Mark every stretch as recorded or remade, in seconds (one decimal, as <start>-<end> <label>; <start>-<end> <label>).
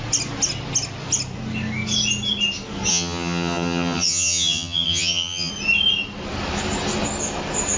0.0-2.9 recorded; 2.9-5.5 remade; 5.5-7.8 recorded